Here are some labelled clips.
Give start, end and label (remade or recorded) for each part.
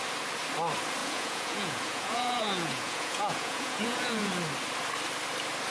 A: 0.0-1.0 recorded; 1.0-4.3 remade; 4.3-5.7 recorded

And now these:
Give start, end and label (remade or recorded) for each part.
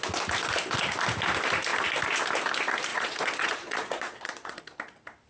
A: 0.0-2.9 recorded; 2.9-4.6 remade; 4.6-5.3 recorded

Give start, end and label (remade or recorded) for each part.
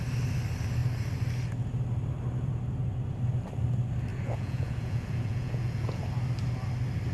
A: 0.0-4.1 recorded; 4.1-6.0 remade; 6.0-7.1 recorded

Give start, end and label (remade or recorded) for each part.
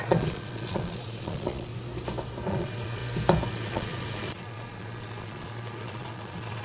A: 0.0-1.7 remade; 1.7-2.5 recorded; 2.5-3.0 remade; 3.0-3.5 recorded; 3.5-6.6 remade